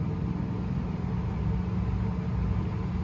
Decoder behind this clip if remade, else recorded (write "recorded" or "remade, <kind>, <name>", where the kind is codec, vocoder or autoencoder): recorded